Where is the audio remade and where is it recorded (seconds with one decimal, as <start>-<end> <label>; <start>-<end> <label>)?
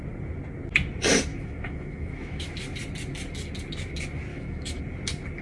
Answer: 0.0-1.3 recorded; 1.3-2.5 remade; 2.5-4.3 recorded; 4.3-4.8 remade; 4.8-5.4 recorded